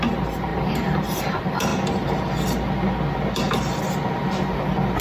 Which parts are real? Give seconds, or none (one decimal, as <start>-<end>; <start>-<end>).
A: 1.7-5.0